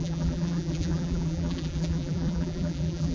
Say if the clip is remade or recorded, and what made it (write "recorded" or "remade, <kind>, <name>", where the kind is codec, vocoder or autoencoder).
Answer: remade, vocoder, BigVGAN v2